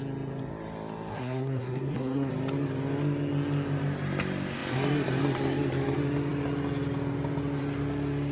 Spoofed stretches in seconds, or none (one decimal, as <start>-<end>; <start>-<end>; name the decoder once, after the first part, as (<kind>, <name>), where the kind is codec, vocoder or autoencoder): 1.1-2.3 (codec, SNAC)